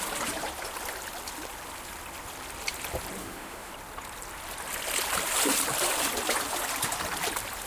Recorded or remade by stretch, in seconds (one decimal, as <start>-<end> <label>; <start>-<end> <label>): 0.0-3.2 recorded; 3.2-3.7 remade; 3.7-7.7 recorded